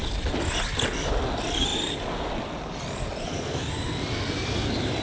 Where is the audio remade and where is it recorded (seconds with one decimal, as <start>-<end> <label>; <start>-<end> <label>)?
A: 0.0-5.0 recorded